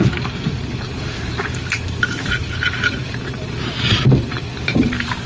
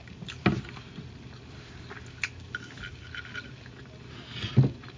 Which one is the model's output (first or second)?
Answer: first